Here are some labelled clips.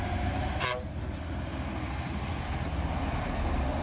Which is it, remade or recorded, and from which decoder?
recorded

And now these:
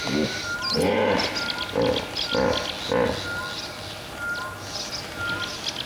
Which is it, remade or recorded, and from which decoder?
recorded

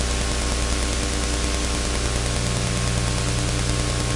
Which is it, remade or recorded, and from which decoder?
recorded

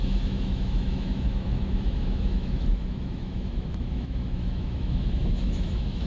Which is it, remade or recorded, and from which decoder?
remade, autoencoder, DAC-VAE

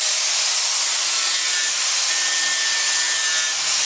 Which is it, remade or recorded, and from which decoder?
recorded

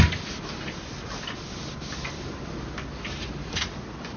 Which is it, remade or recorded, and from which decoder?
recorded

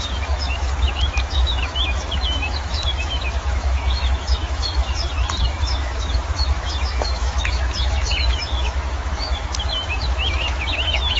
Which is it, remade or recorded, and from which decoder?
remade, autoencoder, DAC-VAE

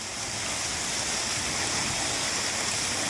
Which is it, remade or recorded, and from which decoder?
recorded